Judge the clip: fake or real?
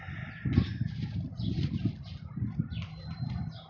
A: real